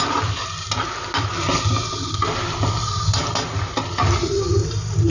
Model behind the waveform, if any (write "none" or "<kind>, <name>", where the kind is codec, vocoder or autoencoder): none